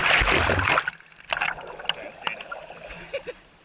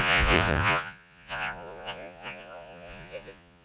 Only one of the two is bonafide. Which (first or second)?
first